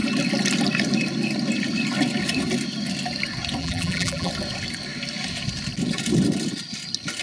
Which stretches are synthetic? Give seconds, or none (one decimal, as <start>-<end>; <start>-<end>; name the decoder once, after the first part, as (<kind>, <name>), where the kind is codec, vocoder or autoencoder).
3.6-4.3 (vocoder, BigVGAN v2)